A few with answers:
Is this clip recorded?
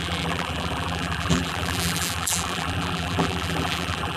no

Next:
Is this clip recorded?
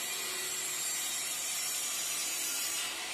no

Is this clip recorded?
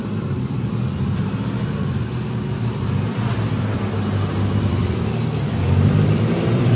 no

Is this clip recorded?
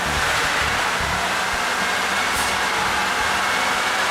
yes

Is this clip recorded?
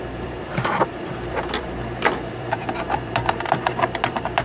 no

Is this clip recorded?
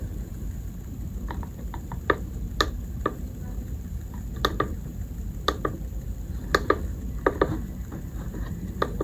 no